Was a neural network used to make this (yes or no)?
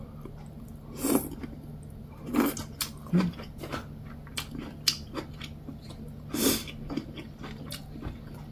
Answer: no